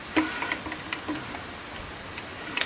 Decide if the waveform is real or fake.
fake